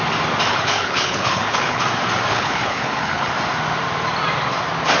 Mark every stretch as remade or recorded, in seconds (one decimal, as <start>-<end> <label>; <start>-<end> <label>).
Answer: 0.0-0.5 recorded; 0.5-1.8 remade; 1.8-2.3 recorded; 2.3-3.3 remade; 3.3-5.0 recorded